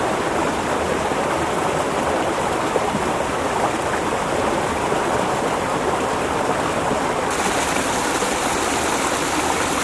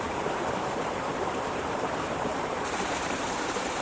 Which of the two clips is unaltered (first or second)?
first